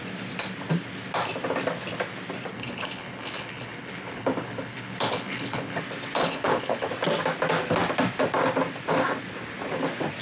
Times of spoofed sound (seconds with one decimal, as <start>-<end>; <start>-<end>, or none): 2.5-5.8; 6.2-6.9